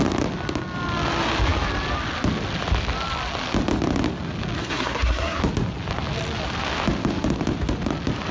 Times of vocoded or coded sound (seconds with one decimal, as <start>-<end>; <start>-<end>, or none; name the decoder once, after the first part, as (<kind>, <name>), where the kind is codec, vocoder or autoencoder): 4.6-5.4 (codec, SNAC)